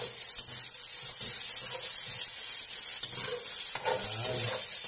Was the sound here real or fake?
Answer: real